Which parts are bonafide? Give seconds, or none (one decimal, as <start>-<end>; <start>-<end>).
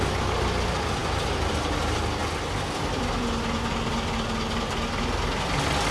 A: 0.0-5.9